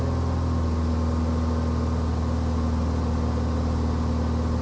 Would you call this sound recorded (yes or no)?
yes